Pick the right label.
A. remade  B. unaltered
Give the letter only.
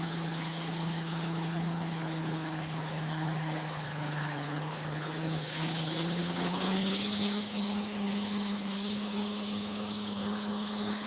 A